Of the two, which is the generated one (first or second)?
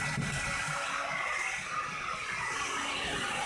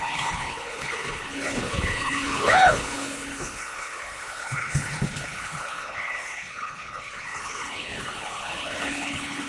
second